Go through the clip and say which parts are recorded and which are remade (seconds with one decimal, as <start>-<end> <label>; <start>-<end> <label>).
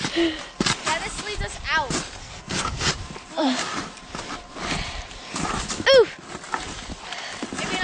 0.0-2.2 recorded; 2.2-2.9 remade; 2.9-7.8 recorded